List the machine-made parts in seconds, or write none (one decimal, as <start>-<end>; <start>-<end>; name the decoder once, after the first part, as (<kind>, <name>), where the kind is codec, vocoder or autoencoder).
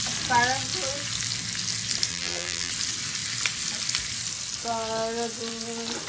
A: 2.1-2.7 (vocoder, BigVGAN v2)